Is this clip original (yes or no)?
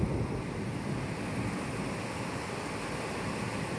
yes